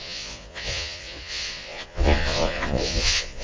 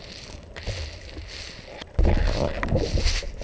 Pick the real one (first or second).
second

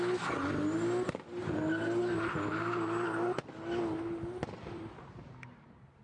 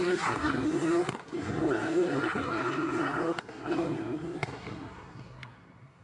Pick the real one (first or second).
first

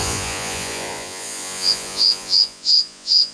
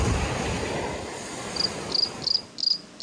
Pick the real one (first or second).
second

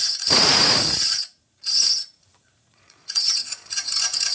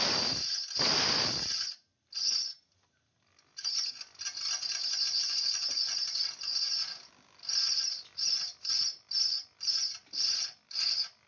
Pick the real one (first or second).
second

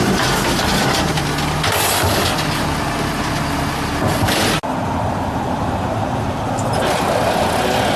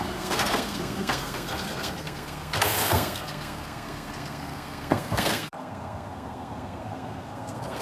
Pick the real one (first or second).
first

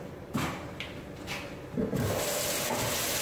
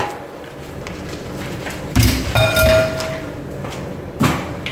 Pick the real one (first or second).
first